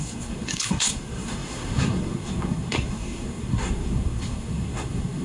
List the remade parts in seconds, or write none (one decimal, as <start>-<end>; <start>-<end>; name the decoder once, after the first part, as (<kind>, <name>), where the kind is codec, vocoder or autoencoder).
0.0-5.2 (codec, SNAC)